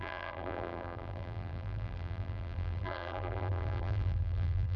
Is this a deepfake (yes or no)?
yes